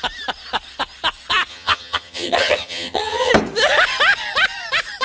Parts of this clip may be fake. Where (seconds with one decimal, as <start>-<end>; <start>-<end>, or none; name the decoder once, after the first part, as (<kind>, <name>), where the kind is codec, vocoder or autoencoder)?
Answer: 1.5-3.3 (vocoder, HiFi-GAN)